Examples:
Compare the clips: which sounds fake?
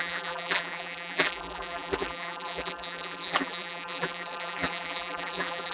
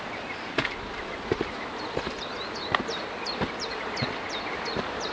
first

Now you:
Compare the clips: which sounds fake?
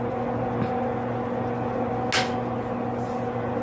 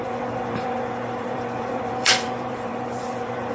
second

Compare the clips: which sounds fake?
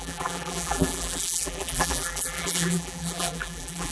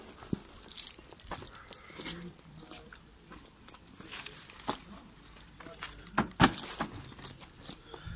first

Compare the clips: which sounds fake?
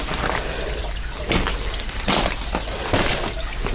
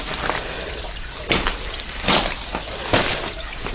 second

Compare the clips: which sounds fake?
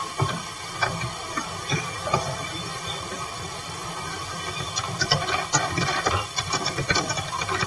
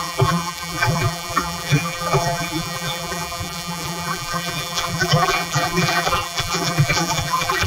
second